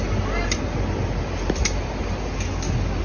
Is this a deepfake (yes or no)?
no